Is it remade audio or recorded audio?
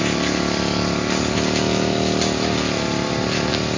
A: recorded